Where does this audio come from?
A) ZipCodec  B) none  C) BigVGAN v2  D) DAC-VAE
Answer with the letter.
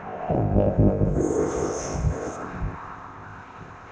A